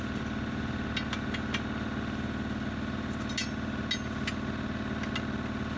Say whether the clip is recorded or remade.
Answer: recorded